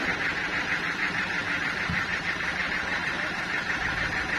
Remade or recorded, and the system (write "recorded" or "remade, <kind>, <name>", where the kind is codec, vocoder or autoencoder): remade, vocoder, BigVGAN v2